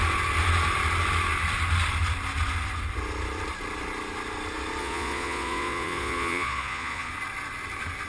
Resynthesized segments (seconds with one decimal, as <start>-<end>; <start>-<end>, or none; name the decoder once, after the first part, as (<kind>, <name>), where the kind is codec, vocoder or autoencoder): 4.8-7.1 (vocoder, Vocos)